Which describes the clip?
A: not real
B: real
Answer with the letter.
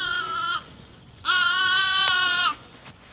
A